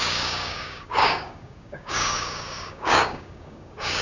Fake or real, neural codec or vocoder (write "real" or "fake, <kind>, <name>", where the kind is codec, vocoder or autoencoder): fake, codec, DAC